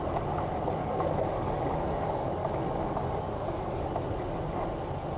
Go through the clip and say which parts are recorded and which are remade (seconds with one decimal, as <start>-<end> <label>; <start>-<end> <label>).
0.0-0.8 recorded; 0.8-3.8 remade; 3.8-5.2 recorded